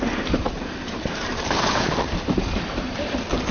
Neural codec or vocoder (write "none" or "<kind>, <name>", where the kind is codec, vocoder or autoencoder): vocoder, BigVGAN v2